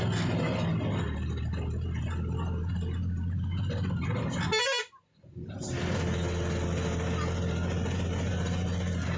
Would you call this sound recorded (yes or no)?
yes